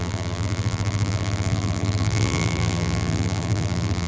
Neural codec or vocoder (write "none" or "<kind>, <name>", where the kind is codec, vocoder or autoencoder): vocoder, BigVGAN v2